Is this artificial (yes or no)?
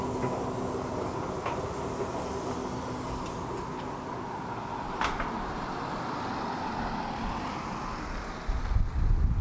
no